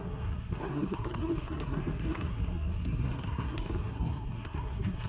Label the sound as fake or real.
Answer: fake